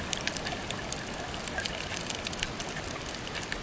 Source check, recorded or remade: recorded